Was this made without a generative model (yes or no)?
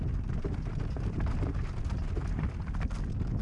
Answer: yes